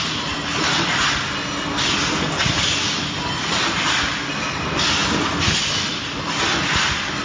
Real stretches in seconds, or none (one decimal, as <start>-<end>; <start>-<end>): 0.0-7.2